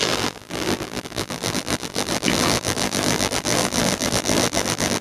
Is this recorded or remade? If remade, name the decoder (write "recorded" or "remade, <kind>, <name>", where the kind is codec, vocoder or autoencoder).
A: remade, vocoder, BigVGAN v2